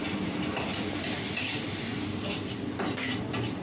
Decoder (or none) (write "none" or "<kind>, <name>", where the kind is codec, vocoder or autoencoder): none